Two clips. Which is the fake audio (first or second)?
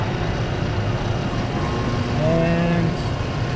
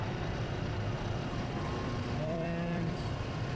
second